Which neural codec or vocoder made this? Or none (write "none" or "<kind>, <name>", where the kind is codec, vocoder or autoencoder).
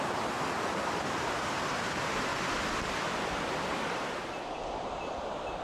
none